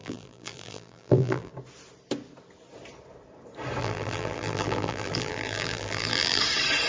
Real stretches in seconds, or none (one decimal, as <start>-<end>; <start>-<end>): 1.5-3.8; 6.4-6.9

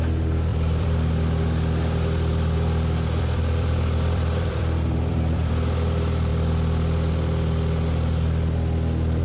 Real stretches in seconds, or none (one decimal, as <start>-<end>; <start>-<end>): 0.0-0.5; 5.5-9.2

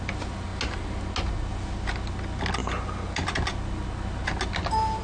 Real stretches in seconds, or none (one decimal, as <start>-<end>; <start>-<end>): 0.0-5.0

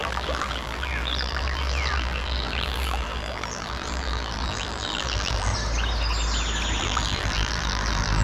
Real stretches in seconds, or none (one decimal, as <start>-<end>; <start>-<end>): 5.5-6.8

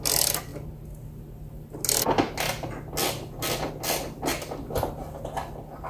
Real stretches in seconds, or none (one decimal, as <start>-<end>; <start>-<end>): 0.0-5.9

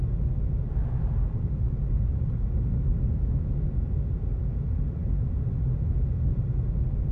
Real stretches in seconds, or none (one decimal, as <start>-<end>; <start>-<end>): 0.0-7.1